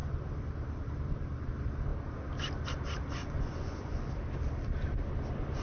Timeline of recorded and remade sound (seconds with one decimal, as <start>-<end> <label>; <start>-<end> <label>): 0.0-3.2 recorded; 3.2-4.1 remade; 4.1-5.6 recorded